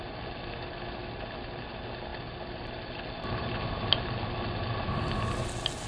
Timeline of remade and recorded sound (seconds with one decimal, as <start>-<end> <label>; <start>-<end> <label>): 0.0-5.9 recorded